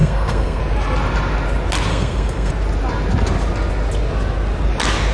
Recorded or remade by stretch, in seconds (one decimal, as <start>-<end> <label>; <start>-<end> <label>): 0.0-0.6 remade; 0.6-1.9 recorded; 1.9-2.5 remade; 2.5-5.1 recorded